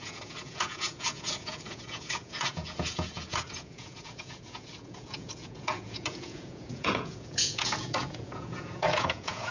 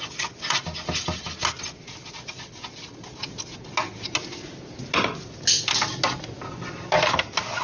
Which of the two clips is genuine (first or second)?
second